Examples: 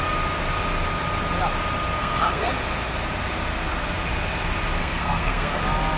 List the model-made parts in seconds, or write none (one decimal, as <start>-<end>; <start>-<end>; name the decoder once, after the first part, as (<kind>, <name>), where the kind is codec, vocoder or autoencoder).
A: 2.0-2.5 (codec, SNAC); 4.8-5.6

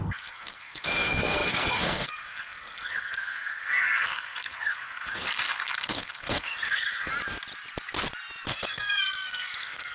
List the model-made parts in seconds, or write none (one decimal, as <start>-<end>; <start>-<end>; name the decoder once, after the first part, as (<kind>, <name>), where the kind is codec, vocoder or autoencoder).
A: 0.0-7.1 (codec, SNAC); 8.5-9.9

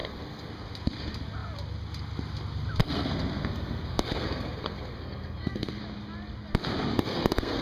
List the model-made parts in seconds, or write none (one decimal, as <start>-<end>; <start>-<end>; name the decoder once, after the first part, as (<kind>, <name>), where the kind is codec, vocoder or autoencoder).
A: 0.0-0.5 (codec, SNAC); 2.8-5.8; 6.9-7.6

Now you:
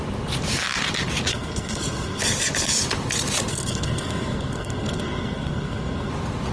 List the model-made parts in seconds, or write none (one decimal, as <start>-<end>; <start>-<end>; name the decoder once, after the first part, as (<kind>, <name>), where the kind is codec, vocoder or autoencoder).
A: 1.3-2.2 (codec, SNAC); 3.5-6.1

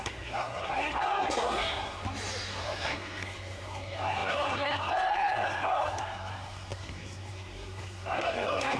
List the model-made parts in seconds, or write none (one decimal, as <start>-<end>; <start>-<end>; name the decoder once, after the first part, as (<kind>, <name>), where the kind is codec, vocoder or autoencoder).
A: 0.0-2.0 (codec, SNAC); 2.5-8.8

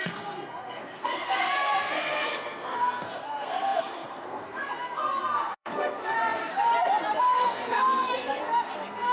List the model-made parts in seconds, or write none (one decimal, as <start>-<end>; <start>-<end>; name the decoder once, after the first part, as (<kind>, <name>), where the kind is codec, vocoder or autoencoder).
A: 0.0-6.7 (codec, SNAC); 7.2-9.1